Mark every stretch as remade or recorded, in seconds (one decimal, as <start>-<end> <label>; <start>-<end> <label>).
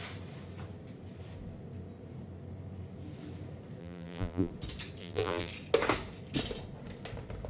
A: 0.0-3.8 recorded; 3.8-4.5 remade; 4.5-5.0 recorded; 5.0-5.5 remade; 5.5-7.5 recorded